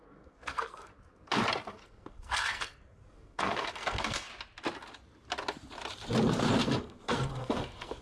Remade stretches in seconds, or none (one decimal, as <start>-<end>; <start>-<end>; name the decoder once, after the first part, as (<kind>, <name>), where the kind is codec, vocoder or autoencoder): 0.0-0.9 (codec, SNAC); 1.7-4.3; 6.6-8.0